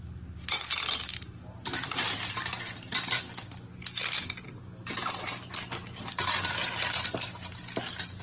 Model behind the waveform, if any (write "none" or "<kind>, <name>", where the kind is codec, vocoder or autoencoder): none